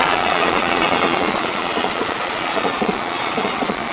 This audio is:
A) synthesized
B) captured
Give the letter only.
A